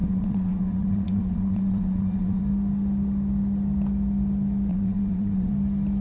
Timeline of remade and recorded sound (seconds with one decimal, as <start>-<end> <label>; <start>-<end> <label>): 0.0-2.4 remade; 2.4-4.7 recorded; 4.7-5.5 remade; 5.5-6.0 recorded